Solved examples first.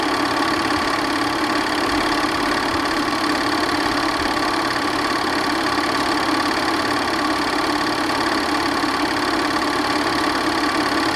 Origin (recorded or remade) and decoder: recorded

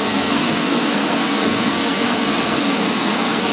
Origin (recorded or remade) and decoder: remade, codec, SNAC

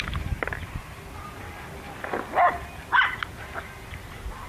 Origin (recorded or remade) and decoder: recorded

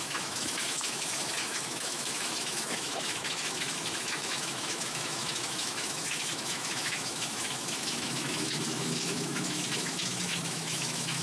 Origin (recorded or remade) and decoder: remade, autoencoder, DAC-VAE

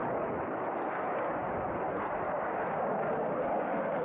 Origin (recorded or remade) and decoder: recorded